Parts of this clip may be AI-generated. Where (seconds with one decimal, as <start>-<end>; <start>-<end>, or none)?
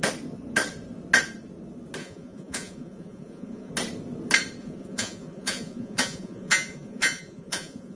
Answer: 2.0-3.7; 4.6-8.0